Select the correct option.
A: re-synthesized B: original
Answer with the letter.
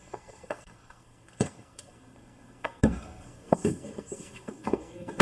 A